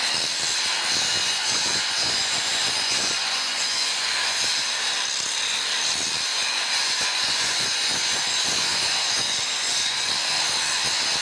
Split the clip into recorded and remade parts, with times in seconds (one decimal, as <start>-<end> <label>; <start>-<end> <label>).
0.0-1.2 recorded; 1.2-4.4 remade; 4.4-6.3 recorded; 6.3-10.1 remade; 10.1-11.2 recorded